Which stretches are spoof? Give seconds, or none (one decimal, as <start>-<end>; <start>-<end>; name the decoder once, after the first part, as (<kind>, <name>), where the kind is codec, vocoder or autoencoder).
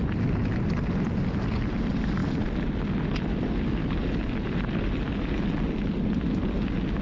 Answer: none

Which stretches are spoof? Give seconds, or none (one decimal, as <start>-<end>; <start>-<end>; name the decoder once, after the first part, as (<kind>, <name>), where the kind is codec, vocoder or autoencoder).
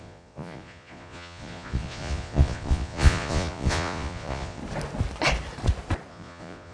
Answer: 0.0-4.6 (vocoder, Vocos); 6.1-6.7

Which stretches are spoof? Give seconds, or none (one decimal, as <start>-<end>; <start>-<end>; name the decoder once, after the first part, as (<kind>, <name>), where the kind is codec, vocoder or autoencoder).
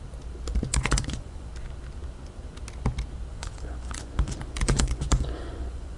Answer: 0.7-1.5 (vocoder, Vocos); 3.3-6.0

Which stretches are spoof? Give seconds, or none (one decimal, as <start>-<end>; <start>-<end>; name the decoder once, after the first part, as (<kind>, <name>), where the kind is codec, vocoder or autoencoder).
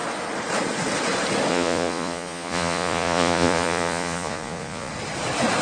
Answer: 1.5-4.9 (vocoder, Vocos)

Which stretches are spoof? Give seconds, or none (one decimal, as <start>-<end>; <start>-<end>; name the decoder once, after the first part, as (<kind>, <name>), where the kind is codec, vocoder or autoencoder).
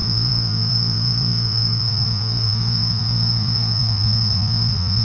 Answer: 0.0-5.0 (vocoder, Vocos)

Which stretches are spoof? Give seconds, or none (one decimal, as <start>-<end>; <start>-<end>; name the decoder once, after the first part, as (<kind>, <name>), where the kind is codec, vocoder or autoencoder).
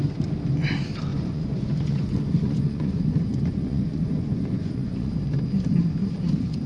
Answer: 1.1-5.1 (vocoder, Vocos)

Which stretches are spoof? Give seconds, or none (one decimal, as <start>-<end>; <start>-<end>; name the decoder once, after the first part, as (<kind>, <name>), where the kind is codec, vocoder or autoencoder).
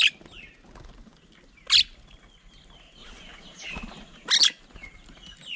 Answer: 3.0-4.3 (vocoder, Vocos)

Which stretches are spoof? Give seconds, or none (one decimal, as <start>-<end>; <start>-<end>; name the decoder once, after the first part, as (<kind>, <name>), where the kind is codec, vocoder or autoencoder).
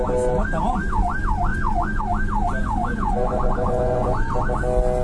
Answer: 1.5-2.0 (vocoder, Vocos); 2.6-4.3